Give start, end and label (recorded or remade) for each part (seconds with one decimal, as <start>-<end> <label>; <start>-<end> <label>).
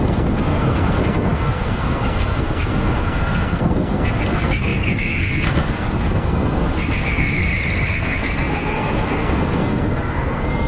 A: 0.0-7.4 remade; 7.4-7.9 recorded; 7.9-10.7 remade